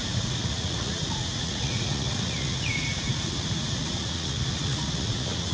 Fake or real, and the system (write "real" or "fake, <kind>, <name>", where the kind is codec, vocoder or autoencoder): fake, vocoder, Vocos